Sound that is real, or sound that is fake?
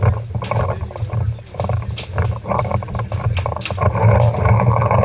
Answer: real